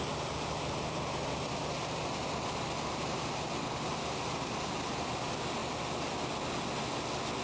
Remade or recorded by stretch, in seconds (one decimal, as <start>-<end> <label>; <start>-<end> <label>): 0.0-7.4 recorded